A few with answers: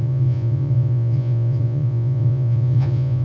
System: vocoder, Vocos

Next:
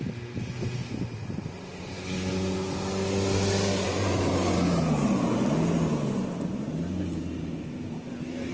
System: none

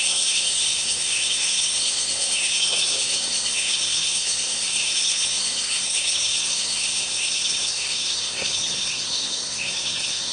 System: codec, SNAC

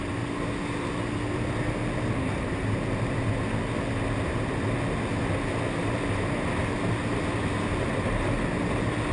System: none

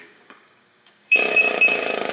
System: codec, DAC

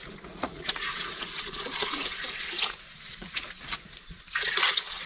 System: vocoder, Vocos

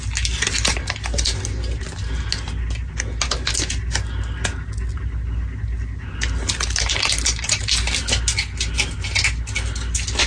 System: none